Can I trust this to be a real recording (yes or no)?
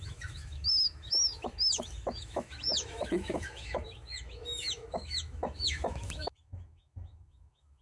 no